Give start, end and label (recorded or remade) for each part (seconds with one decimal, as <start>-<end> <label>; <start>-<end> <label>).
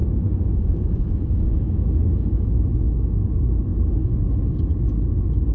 0.0-3.3 remade; 3.3-5.5 recorded